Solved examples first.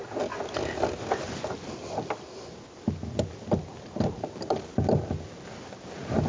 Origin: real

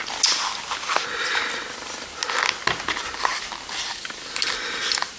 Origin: real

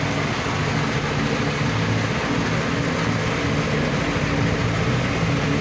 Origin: real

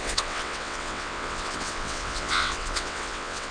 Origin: fake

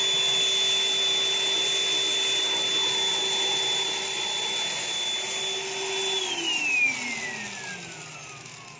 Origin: real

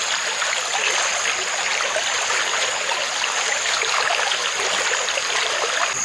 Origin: real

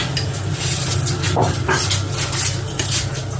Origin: real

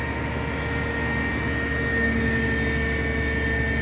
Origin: real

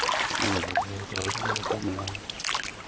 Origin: real